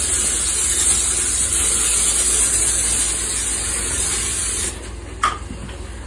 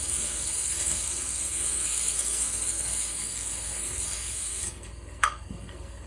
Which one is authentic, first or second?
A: first